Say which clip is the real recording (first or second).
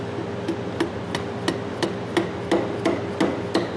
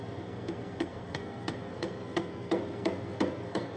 first